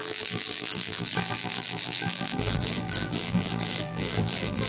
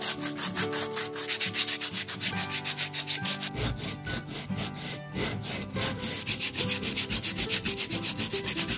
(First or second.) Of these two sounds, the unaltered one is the second